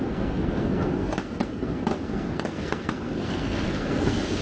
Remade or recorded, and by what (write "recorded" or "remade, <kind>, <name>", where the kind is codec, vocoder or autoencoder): remade, codec, SNAC